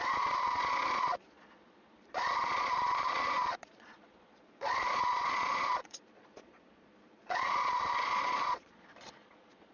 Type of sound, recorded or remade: remade